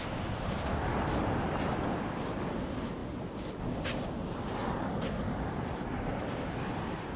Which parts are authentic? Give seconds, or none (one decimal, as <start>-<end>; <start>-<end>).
0.0-7.2